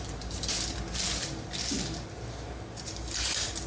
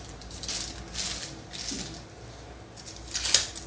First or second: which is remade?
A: first